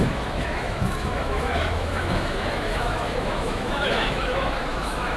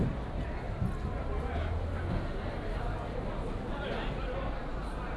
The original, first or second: second